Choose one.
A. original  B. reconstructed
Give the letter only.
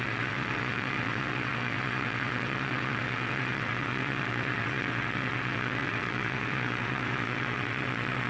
B